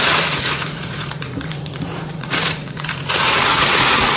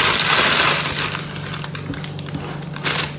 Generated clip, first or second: first